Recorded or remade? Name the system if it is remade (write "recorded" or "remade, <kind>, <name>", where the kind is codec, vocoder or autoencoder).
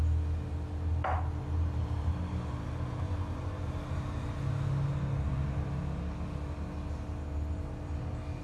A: recorded